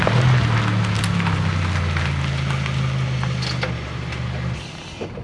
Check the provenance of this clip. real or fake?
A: real